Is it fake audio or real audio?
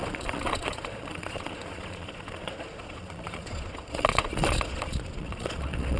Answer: fake